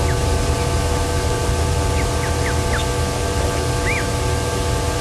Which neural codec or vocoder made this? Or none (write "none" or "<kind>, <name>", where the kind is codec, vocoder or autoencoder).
none